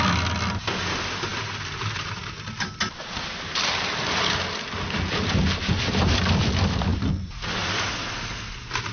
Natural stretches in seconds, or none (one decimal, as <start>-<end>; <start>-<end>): 0.0-8.9